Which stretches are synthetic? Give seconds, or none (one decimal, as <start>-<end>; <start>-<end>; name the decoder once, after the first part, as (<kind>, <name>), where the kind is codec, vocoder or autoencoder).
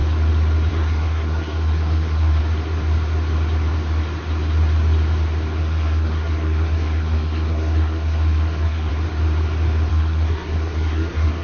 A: 0.7-2.4 (codec, SNAC); 5.6-8.9; 9.9-11.4